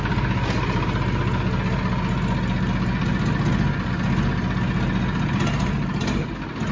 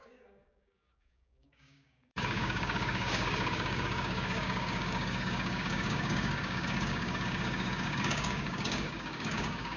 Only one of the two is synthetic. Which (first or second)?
second